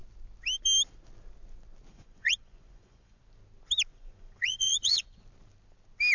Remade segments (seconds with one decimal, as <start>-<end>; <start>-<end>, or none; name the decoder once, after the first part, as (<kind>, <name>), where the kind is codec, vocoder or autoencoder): 1.9-3.2 (vocoder, Vocos); 3.9-5.2